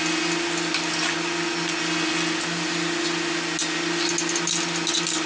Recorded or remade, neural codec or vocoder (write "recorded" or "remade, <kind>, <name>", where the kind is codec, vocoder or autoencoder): recorded